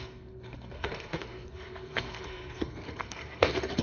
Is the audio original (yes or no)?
no